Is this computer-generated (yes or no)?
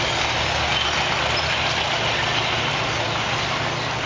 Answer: no